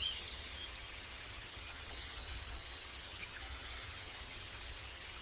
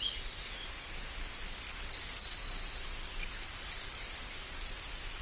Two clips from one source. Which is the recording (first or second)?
second